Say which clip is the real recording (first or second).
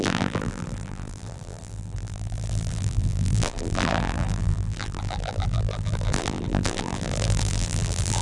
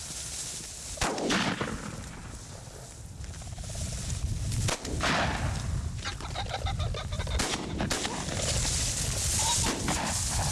second